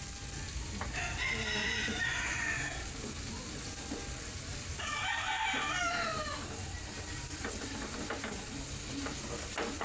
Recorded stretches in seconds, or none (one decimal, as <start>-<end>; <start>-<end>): 0.0-1.6; 2.6-9.8